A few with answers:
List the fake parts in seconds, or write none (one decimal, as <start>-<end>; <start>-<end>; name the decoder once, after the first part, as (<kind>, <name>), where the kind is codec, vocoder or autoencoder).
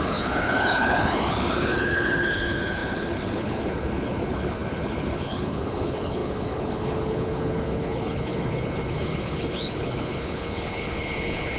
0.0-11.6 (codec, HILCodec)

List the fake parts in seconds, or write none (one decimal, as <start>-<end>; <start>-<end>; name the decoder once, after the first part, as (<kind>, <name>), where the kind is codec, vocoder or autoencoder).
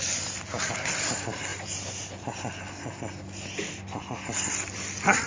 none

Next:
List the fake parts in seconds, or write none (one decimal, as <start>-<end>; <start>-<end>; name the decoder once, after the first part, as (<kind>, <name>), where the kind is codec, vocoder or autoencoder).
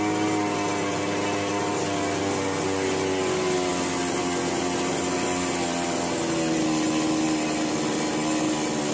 none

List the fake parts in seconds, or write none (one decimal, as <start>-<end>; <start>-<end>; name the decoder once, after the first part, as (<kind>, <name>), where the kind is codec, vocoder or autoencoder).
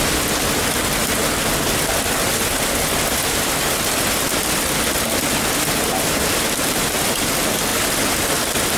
none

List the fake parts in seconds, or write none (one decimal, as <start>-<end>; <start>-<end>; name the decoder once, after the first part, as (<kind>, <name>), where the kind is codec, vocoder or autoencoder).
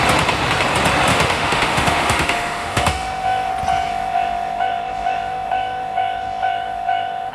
1.1-3.5 (autoencoder, DAC-VAE); 3.9-7.3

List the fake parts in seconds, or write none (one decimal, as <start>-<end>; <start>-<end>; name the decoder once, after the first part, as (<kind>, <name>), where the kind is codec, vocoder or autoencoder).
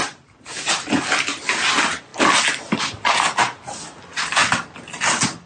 none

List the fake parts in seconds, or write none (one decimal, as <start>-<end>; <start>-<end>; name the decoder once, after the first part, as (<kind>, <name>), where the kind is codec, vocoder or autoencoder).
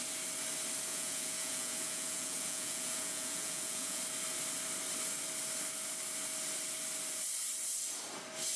0.9-4.0 (vocoder, Vocos)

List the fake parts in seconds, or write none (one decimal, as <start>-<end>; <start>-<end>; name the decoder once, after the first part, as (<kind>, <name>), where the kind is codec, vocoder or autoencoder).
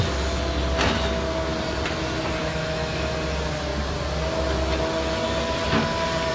2.4-3.1 (autoencoder, DAC-VAE)